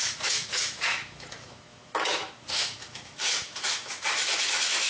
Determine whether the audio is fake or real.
fake